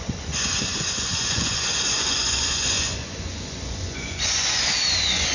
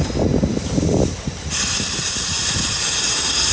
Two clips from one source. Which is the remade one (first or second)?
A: first